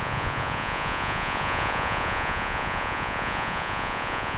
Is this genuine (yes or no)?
no